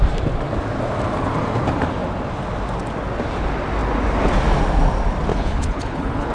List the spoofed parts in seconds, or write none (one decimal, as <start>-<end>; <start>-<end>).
5.3-6.3